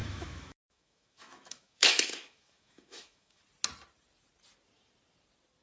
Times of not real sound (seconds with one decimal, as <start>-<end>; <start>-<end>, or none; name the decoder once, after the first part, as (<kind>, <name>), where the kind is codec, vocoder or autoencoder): 0.0-3.4 (autoencoder, DAC-VAE)